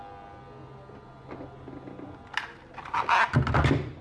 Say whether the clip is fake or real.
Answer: real